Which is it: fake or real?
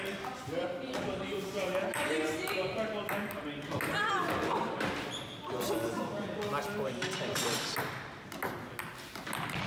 real